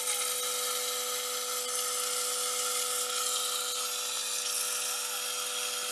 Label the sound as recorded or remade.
recorded